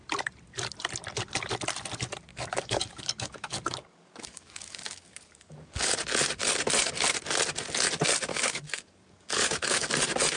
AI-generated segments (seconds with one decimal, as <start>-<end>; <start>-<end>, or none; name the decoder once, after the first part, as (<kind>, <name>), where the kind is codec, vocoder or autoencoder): 2.3-5.9 (codec, DAC); 8.3-9.9